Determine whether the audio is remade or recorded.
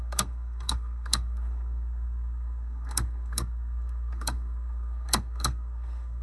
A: remade